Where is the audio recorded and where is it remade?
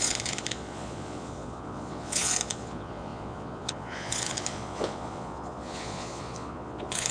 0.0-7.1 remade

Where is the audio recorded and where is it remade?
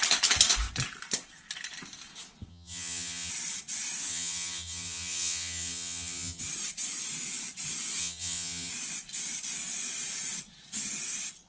0.0-2.5 recorded; 2.5-3.3 remade; 3.3-4.1 recorded; 4.1-6.4 remade; 6.4-8.0 recorded; 8.0-8.7 remade; 8.7-11.5 recorded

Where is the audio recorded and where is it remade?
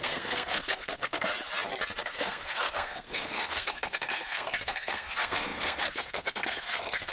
0.0-1.3 remade; 1.3-2.0 recorded; 2.0-7.1 remade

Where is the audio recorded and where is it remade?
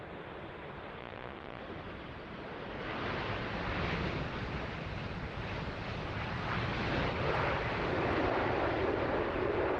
0.0-1.0 recorded; 1.0-1.6 remade; 1.6-9.8 recorded